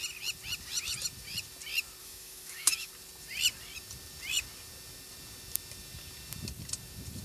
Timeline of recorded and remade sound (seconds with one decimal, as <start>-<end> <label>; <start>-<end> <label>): 0.0-2.0 recorded; 2.0-2.9 remade; 2.9-7.2 recorded